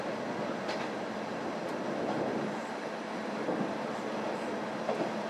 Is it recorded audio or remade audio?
recorded